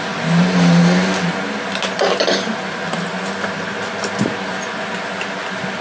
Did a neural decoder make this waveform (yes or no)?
no